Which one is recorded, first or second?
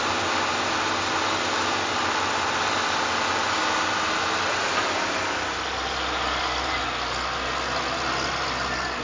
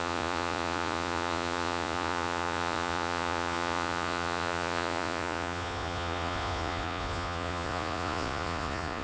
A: first